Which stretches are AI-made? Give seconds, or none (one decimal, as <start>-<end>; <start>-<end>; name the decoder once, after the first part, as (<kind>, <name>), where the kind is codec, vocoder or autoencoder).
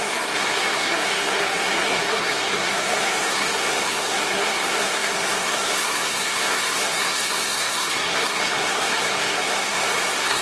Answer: 0.0-10.4 (codec, SNAC)